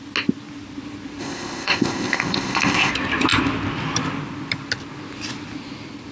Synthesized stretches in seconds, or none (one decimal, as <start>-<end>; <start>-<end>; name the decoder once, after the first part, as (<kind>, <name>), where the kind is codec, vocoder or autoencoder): 1.2-2.9 (codec, ZipCodec)